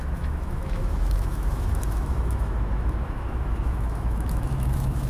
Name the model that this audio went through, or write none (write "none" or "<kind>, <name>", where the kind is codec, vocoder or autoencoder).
autoencoder, DAC-VAE